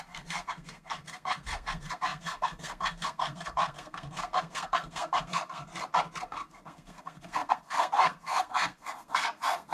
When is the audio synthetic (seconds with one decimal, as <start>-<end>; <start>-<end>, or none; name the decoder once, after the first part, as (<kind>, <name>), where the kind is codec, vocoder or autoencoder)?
0.0-5.7 (codec, SNAC); 6.2-9.7